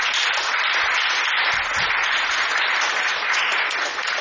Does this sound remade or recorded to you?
recorded